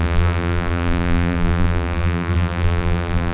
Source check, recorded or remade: remade